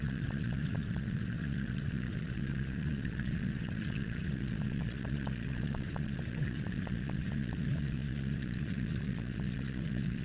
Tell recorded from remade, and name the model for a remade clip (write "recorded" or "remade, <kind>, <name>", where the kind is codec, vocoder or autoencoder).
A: remade, vocoder, Vocos